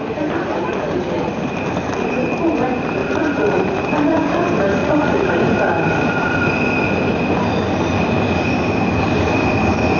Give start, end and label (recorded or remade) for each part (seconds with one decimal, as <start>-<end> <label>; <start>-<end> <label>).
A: 0.0-3.0 recorded; 3.0-3.6 remade; 3.6-4.8 recorded; 4.8-5.3 remade; 5.3-10.0 recorded